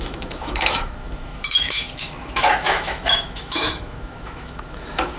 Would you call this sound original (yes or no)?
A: no